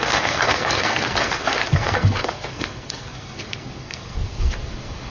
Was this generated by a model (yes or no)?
yes